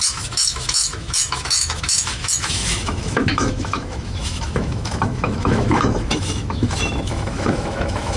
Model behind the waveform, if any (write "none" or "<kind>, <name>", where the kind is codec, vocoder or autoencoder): autoencoder, DAC-VAE